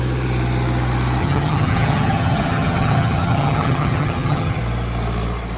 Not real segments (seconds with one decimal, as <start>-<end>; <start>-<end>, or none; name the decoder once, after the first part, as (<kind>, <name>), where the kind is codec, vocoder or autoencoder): 1.2-4.6 (vocoder, HiFi-GAN)